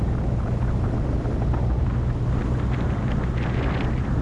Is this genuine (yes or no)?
yes